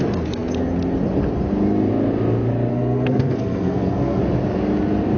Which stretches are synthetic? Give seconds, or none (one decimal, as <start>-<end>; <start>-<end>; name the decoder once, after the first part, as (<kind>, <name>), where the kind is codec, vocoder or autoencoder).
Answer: 2.7-4.2 (codec, SNAC)